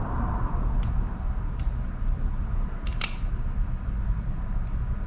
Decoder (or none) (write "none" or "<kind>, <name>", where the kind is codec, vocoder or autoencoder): none